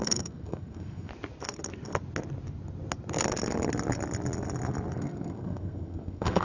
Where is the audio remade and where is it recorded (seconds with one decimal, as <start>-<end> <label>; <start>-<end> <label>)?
0.0-1.1 remade; 1.1-4.9 recorded; 4.9-6.4 remade